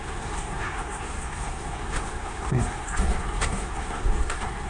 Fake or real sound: fake